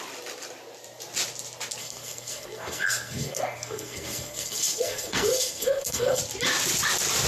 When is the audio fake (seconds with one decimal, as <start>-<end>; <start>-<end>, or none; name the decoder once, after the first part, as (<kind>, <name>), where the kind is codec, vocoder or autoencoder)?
1.8-6.2 (codec, SNAC)